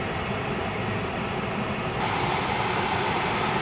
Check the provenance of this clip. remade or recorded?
recorded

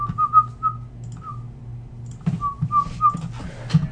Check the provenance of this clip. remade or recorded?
recorded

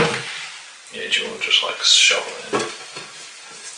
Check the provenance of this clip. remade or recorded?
recorded